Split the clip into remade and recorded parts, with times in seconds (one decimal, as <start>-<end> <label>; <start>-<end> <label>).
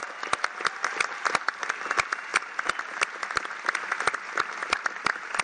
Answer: 0.0-5.4 recorded